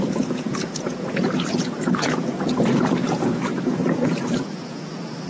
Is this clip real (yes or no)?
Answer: no